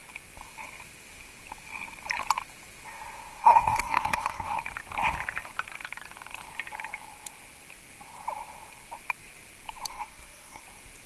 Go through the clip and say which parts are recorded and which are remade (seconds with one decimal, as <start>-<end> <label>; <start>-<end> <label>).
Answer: 0.0-3.4 recorded; 3.4-4.6 remade; 4.6-9.9 recorded; 9.9-10.6 remade; 10.6-11.1 recorded